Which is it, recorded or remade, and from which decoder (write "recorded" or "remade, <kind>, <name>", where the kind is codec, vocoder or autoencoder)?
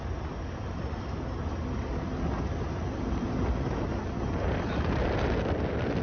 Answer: recorded